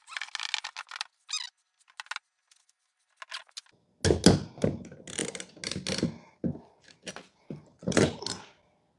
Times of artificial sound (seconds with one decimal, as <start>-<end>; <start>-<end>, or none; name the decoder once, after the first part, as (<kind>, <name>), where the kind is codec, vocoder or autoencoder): none